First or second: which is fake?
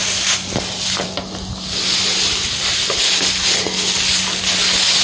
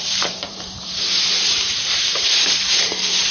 second